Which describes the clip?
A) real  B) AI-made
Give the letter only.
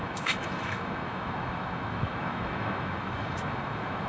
B